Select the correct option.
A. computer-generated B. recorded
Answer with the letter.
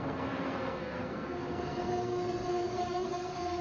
A